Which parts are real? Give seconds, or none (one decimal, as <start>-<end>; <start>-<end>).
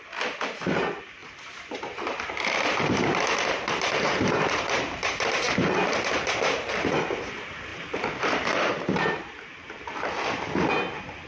0.0-1.2; 5.2-7.7; 10.1-11.3